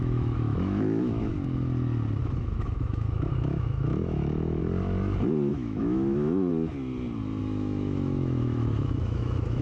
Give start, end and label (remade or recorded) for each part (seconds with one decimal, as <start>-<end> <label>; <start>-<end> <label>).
0.0-1.3 remade; 1.3-2.2 recorded; 2.2-4.6 remade; 4.6-5.5 recorded; 5.5-6.5 remade; 6.5-7.4 recorded; 7.4-9.6 remade